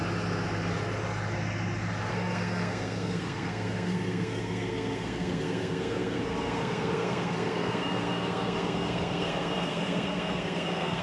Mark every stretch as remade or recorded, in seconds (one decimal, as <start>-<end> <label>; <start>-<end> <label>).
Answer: 0.0-2.1 recorded; 2.1-11.0 remade